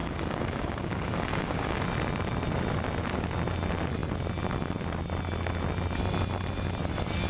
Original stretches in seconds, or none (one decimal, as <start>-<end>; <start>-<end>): 1.8-7.3